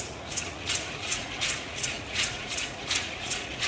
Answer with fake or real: fake